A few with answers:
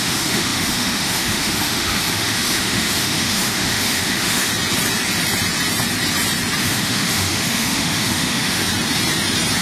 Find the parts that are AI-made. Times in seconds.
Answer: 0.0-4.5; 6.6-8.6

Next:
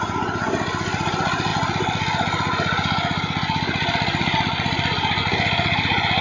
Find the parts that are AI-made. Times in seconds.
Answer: none

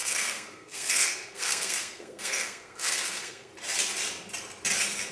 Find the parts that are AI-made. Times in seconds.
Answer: 0.0-3.5